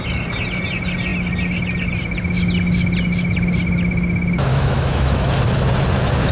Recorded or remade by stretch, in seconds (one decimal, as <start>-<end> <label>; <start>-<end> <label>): 0.0-4.5 recorded; 4.5-5.3 remade; 5.3-6.3 recorded